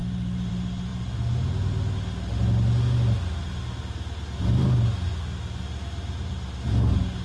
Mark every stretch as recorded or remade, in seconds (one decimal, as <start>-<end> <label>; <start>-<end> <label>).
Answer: 0.0-0.5 remade; 0.5-7.2 recorded